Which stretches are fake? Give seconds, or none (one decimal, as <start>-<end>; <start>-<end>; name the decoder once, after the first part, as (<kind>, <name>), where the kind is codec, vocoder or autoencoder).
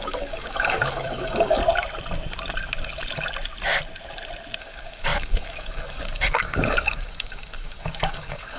0.0-1.6 (codec, DAC); 4.6-8.6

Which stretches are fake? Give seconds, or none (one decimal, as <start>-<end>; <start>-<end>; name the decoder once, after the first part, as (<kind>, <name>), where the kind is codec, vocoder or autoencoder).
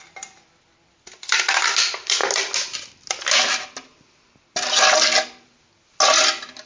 none